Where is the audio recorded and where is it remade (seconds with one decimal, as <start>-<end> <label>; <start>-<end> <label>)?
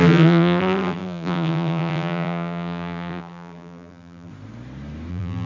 0.0-4.3 remade; 4.3-5.1 recorded; 5.1-5.5 remade